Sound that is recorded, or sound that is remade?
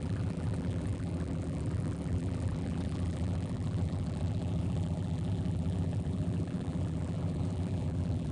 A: remade